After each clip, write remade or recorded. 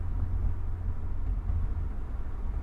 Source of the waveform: recorded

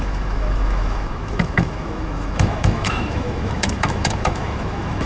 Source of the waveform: remade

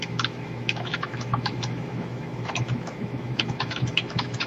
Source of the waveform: remade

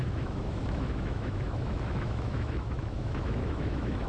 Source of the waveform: remade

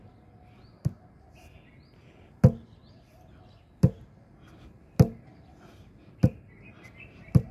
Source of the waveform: recorded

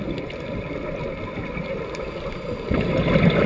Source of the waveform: recorded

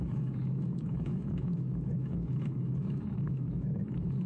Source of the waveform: remade